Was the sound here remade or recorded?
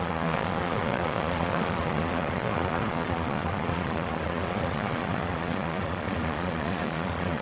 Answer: remade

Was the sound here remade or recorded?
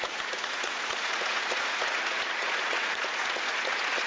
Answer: remade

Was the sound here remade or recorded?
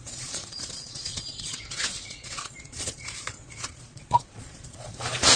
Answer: remade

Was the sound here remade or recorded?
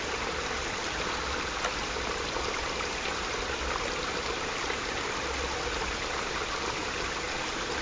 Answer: recorded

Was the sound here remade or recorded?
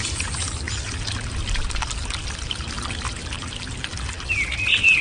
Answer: recorded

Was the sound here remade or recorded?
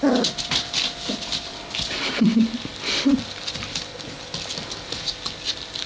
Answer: recorded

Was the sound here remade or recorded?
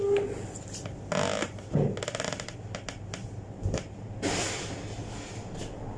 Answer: recorded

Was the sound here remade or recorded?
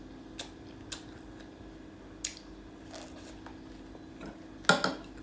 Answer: recorded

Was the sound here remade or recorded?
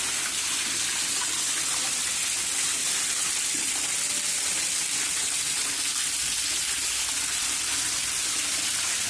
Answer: recorded